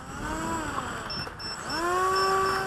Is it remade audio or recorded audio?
recorded